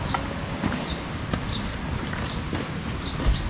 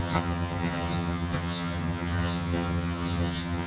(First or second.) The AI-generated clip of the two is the second